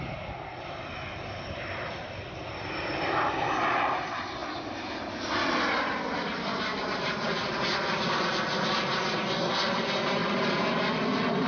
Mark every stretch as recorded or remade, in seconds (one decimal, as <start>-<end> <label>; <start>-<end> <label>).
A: 0.0-11.5 recorded